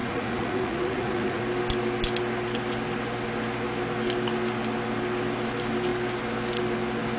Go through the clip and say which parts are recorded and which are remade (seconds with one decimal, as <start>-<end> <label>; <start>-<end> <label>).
0.0-1.4 remade; 1.4-7.2 recorded